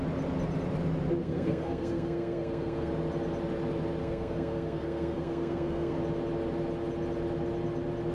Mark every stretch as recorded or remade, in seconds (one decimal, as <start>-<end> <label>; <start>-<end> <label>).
0.0-1.2 recorded; 1.2-2.9 remade; 2.9-4.0 recorded; 4.0-6.0 remade; 6.0-8.1 recorded

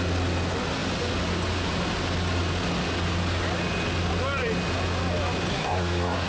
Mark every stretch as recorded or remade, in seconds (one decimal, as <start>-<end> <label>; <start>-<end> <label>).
0.0-5.5 recorded; 5.5-6.3 remade

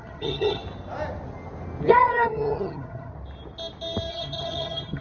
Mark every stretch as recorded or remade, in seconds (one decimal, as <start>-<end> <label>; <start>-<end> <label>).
0.0-0.6 remade; 0.6-1.9 recorded; 1.9-3.1 remade; 3.1-4.1 recorded; 4.1-5.0 remade